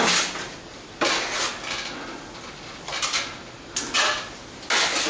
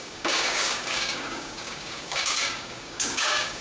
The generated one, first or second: second